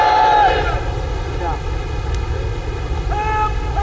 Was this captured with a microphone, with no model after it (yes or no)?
yes